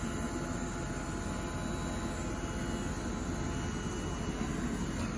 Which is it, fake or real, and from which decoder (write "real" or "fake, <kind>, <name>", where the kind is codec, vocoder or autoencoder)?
real